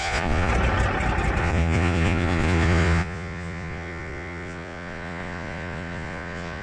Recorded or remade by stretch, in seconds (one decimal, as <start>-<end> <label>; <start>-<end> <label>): 0.0-0.5 remade; 0.5-1.4 recorded; 1.4-6.6 remade